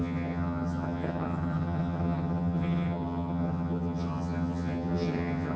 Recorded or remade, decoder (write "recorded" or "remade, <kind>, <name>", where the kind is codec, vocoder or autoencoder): remade, vocoder, HiFi-GAN